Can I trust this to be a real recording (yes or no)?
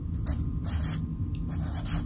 yes